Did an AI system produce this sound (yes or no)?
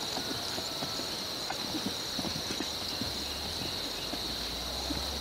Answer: no